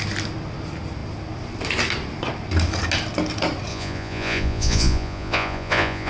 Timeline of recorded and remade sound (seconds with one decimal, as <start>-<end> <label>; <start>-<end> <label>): 0.0-3.7 recorded; 3.7-6.1 remade